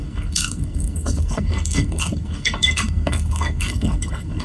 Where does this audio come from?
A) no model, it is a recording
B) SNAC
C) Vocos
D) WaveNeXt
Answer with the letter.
B